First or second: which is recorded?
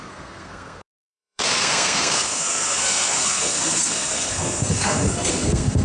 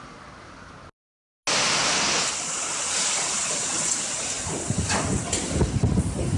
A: second